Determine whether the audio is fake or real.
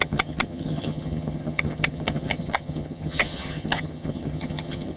fake